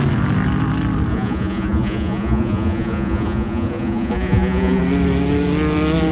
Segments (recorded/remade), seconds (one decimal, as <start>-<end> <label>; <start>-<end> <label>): 0.0-1.1 recorded; 1.1-4.8 remade; 4.8-6.1 recorded